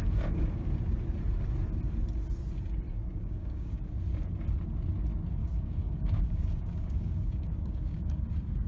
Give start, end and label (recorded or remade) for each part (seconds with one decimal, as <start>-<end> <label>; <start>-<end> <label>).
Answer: 0.0-2.9 recorded; 2.9-3.8 remade; 3.8-5.4 recorded; 5.4-8.2 remade; 8.2-8.7 recorded